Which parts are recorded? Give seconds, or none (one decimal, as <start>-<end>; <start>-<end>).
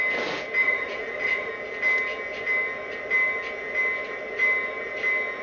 0.0-0.6; 1.5-5.4